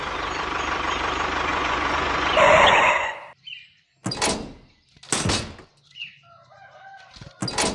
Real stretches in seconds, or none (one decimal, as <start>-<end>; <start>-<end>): 0.0-1.5; 3.2-7.7